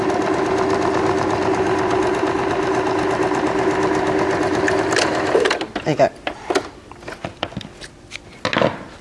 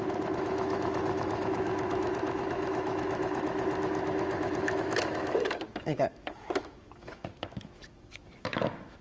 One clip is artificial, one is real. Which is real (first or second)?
first